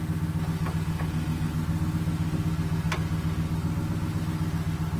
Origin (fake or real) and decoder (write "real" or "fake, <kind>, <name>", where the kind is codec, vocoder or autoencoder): real